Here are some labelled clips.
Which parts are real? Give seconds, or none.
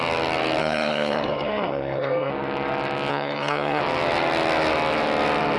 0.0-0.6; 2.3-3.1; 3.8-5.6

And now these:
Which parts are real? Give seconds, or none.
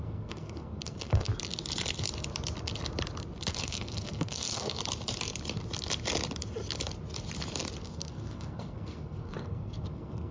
1.3-3.5; 4.8-7.8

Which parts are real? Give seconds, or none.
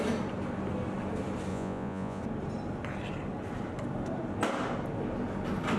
0.0-1.5; 2.2-5.8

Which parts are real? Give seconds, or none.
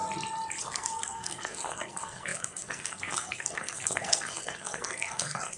0.0-0.6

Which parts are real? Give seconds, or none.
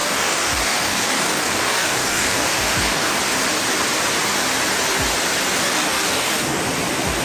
3.2-5.6; 6.6-7.2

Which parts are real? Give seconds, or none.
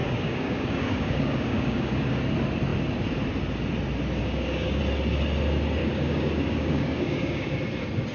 2.2-4.2; 4.8-5.8; 7.6-8.1